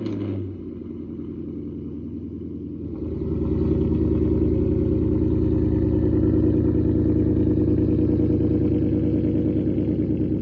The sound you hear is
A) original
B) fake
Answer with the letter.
A